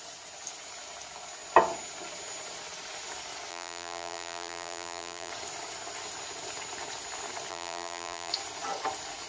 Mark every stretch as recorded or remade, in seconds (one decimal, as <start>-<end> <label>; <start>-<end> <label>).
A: 0.0-3.5 recorded; 3.5-5.3 remade; 5.3-7.5 recorded; 7.5-8.3 remade; 8.3-9.3 recorded